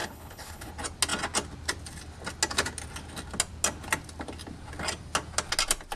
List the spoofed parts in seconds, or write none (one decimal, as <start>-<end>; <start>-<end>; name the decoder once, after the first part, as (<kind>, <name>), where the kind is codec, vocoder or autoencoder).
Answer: 0.0-0.7 (codec, HILCodec)